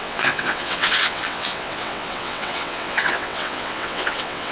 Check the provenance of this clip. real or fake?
fake